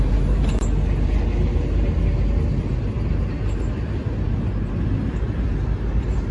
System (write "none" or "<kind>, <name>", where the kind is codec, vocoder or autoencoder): none